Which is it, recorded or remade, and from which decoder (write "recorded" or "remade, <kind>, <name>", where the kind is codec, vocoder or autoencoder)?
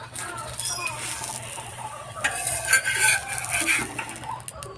recorded